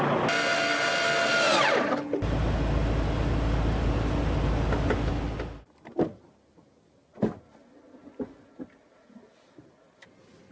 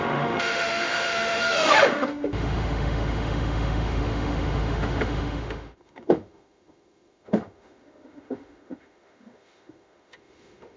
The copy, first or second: second